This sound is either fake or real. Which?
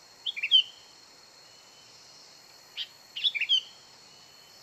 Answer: real